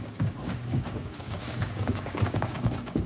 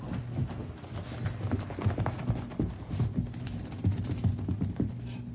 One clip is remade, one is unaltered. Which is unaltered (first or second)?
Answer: second